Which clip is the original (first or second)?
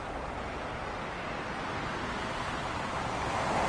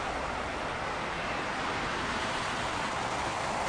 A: second